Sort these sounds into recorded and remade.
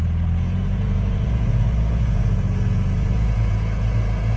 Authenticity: remade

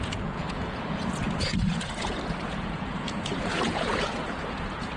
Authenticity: remade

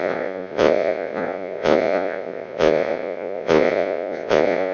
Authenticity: remade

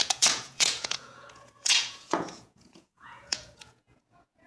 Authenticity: remade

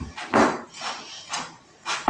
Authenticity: recorded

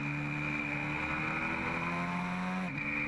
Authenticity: recorded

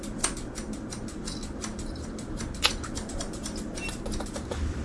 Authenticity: recorded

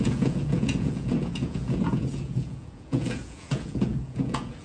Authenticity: remade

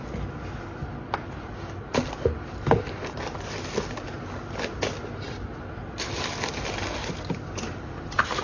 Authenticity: recorded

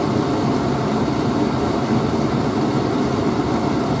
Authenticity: recorded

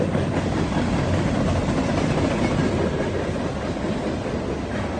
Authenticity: recorded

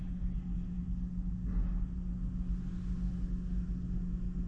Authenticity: recorded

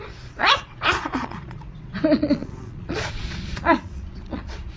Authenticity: remade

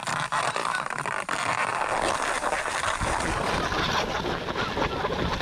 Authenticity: recorded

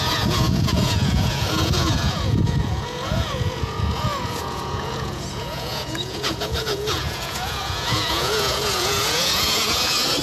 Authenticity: remade